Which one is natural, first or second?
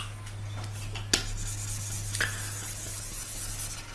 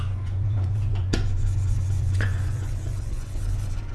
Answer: first